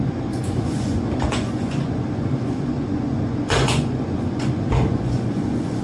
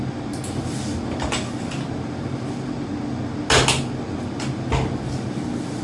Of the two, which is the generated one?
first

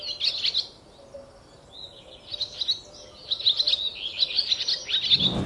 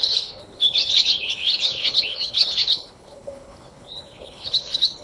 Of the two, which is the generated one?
second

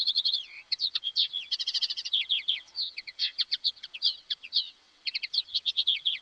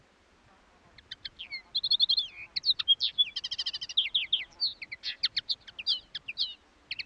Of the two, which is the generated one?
first